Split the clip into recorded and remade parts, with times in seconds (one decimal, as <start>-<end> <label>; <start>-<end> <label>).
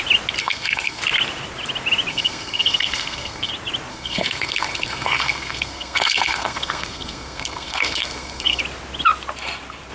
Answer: 0.0-0.4 recorded; 0.4-1.0 remade; 1.0-2.1 recorded; 2.1-3.5 remade; 3.5-3.9 recorded; 3.9-8.6 remade; 8.6-9.9 recorded